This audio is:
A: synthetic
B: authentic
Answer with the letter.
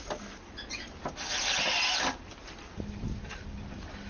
B